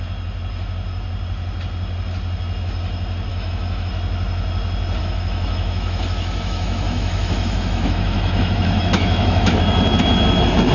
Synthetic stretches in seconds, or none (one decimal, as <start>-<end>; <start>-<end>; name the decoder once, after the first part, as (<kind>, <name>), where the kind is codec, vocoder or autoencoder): 3.3-3.9 (autoencoder, DAC-VAE); 5.0-9.6